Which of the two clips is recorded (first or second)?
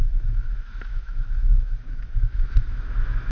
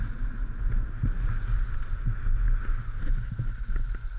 second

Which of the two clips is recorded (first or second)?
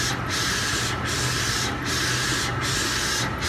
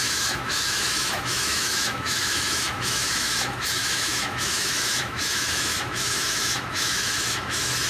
first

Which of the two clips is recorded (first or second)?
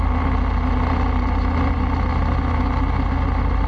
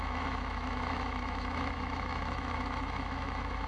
first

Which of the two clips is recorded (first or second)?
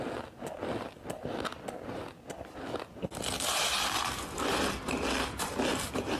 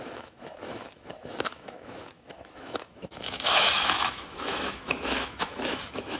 first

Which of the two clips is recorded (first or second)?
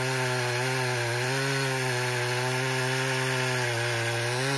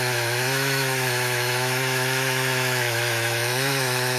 first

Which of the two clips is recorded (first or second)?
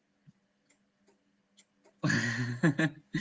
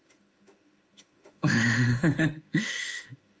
first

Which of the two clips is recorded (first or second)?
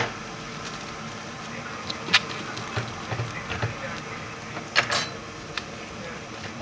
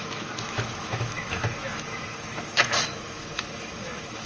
first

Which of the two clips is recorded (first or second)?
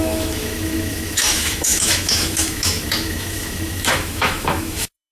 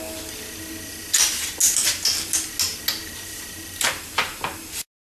second